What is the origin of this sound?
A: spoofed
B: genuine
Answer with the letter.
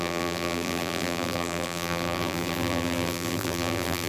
A